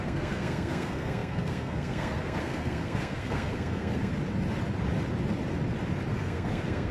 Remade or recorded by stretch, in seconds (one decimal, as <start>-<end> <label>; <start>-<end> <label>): 0.0-4.1 remade; 4.1-6.1 recorded; 6.1-6.9 remade